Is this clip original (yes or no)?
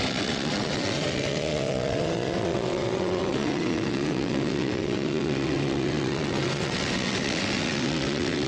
no